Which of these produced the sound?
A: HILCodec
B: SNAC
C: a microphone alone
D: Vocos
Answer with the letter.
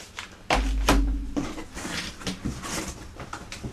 C